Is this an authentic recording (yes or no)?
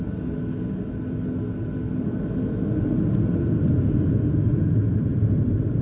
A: yes